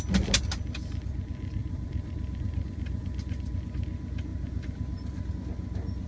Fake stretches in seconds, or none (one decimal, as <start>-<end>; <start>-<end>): 1.6-3.5